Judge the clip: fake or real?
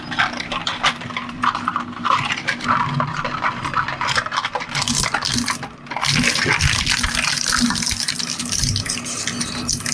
real